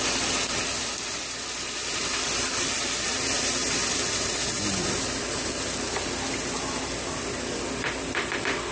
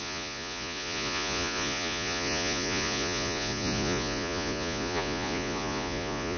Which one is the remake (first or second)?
second